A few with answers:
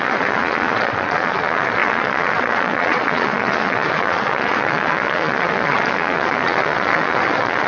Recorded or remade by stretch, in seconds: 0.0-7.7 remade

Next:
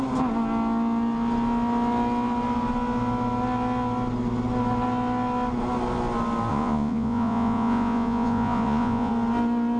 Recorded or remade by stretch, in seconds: 0.0-6.5 recorded; 6.5-9.1 remade; 9.1-9.8 recorded

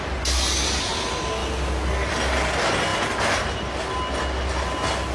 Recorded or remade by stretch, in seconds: 0.0-5.1 recorded